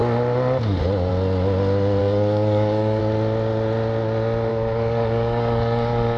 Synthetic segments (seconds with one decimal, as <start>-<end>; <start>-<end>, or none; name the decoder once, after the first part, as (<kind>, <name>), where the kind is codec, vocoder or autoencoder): 2.0-3.0 (codec, DAC); 4.5-6.2